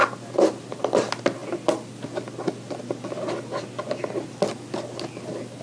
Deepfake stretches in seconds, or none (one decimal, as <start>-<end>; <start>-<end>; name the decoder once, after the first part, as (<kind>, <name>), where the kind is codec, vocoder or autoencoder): none